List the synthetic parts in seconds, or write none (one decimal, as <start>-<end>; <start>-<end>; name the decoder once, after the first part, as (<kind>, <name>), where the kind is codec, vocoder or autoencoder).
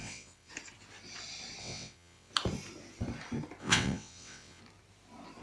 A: 0.0-0.5 (vocoder, WaveNeXt); 1.6-2.3; 3.6-4.6